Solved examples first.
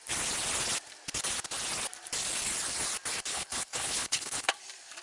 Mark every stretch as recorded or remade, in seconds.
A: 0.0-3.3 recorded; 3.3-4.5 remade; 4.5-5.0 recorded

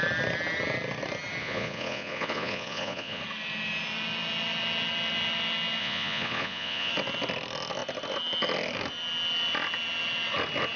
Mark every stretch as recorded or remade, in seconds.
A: 0.0-1.4 recorded; 1.4-3.2 remade; 3.2-5.8 recorded; 5.8-6.9 remade; 6.9-10.8 recorded

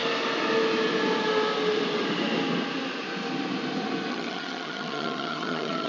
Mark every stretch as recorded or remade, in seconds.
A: 0.0-4.1 recorded; 4.1-5.9 remade

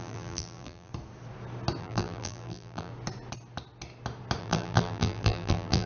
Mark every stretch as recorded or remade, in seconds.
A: 0.0-0.9 remade; 0.9-1.8 recorded; 1.8-2.9 remade; 2.9-4.4 recorded; 4.4-5.9 remade

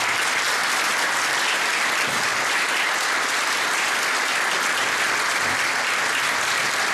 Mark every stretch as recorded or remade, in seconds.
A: 0.0-0.6 recorded; 0.6-1.4 remade; 1.4-2.3 recorded; 2.3-4.3 remade; 4.3-6.9 recorded

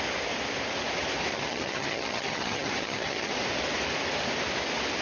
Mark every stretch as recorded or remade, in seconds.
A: 0.0-1.3 recorded; 1.3-3.3 remade; 3.3-5.0 recorded

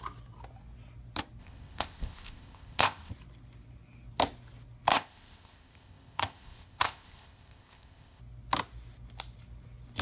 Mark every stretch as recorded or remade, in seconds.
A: 0.0-1.4 recorded; 1.4-3.1 remade; 3.1-4.9 recorded; 4.9-8.2 remade; 8.2-10.0 recorded

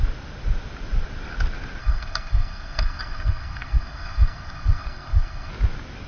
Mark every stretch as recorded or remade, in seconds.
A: 0.0-1.8 recorded; 1.8-5.5 remade; 5.5-6.1 recorded